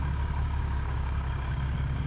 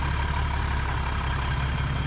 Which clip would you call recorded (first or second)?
second